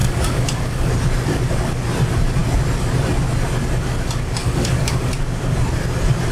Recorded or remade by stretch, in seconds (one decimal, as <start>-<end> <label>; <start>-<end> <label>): 0.0-0.9 remade; 0.9-4.4 recorded; 4.4-5.1 remade; 5.1-6.3 recorded